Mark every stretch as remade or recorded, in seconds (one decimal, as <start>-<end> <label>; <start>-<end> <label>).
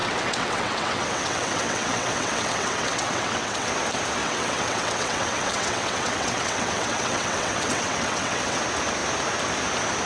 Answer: 0.0-3.7 remade; 3.7-4.2 recorded; 4.2-8.6 remade; 8.6-10.1 recorded